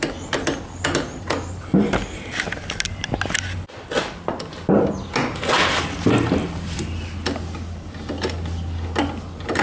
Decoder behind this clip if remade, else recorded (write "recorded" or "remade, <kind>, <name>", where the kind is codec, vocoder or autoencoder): recorded